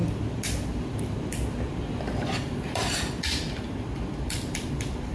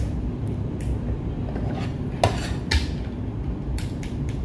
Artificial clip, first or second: first